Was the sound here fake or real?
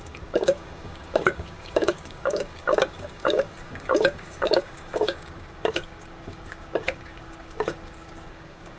fake